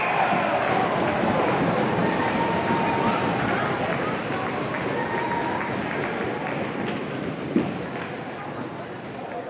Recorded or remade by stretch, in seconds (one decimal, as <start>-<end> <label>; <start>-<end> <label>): 0.0-2.0 recorded; 2.0-3.8 remade; 3.8-9.5 recorded